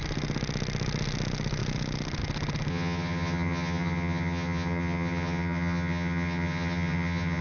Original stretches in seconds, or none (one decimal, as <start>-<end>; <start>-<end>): 0.0-2.7